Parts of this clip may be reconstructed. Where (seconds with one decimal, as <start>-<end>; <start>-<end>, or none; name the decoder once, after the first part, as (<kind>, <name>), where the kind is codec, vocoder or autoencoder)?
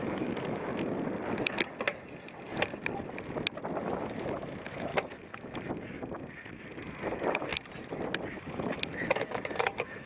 0.0-0.7 (autoencoder, DAC-VAE); 3.8-7.5; 8.3-10.1